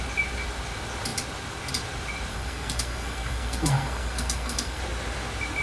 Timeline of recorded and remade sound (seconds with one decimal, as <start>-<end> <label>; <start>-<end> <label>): 0.0-2.3 recorded; 2.3-4.8 remade; 4.8-5.6 recorded